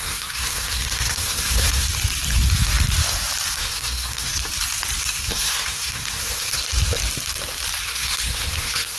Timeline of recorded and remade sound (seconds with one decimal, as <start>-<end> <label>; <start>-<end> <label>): 0.0-1.9 remade; 1.9-3.6 recorded; 3.6-4.3 remade; 4.3-5.0 recorded; 5.0-6.6 remade; 6.6-7.8 recorded; 7.8-9.0 remade